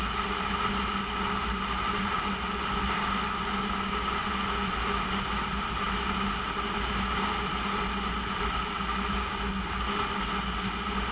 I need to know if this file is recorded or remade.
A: recorded